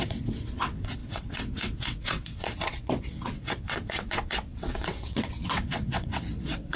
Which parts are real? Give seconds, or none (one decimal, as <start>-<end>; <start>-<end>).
none

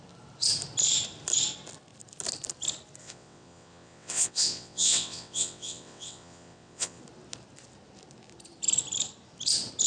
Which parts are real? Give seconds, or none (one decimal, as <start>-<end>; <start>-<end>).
0.0-3.0; 7.0-9.9

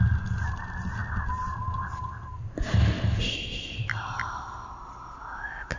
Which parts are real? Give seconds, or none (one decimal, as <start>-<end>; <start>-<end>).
0.0-5.8